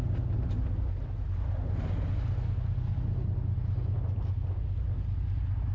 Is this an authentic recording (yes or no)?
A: yes